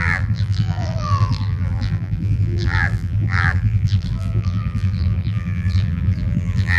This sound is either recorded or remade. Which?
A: remade